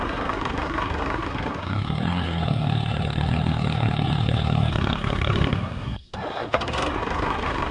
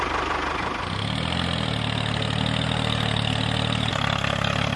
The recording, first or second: second